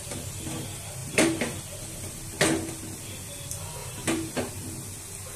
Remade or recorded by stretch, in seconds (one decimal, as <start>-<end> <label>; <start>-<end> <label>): 0.0-1.0 recorded; 1.0-1.6 remade; 1.6-3.8 recorded; 3.8-4.5 remade; 4.5-5.4 recorded